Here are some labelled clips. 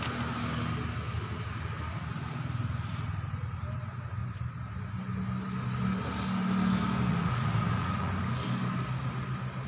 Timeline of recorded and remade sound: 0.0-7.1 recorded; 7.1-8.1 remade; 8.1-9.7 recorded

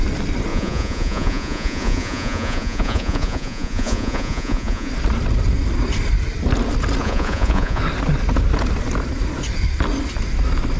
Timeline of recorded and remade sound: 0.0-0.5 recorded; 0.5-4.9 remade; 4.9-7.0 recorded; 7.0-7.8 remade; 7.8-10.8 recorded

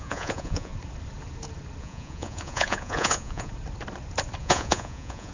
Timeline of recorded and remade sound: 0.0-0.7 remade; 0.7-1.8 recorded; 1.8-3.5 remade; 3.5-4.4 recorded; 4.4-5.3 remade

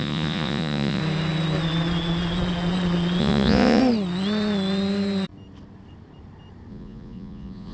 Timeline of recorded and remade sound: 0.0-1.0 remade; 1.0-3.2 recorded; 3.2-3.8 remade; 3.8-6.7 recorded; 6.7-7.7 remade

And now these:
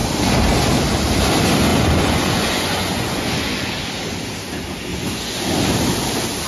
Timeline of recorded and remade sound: 0.0-1.7 recorded; 1.7-3.7 remade; 3.7-4.9 recorded; 4.9-5.5 remade; 5.5-6.5 recorded